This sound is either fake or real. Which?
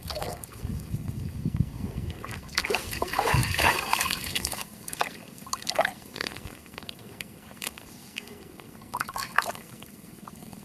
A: fake